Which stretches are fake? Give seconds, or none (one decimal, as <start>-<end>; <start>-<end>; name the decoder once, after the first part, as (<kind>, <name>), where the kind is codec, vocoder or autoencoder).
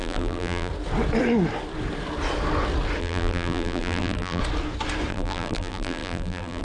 0.0-0.7 (vocoder, BigVGAN v2); 3.0-4.4; 5.1-6.6